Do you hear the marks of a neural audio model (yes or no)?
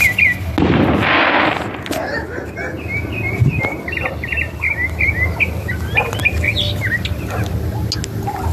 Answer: no